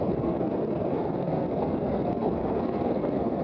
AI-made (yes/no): yes